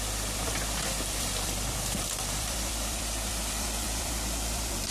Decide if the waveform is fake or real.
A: fake